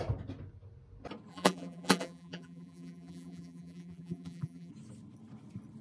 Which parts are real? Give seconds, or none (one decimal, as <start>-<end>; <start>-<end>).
0.0-1.3; 4.7-5.8